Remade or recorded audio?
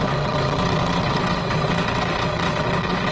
remade